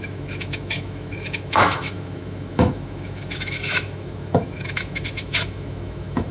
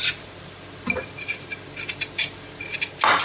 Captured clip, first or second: second